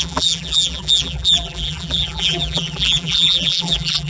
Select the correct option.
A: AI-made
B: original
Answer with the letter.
A